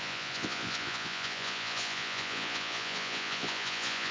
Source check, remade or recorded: remade